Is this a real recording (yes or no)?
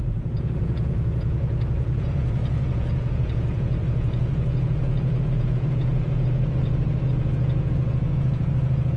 no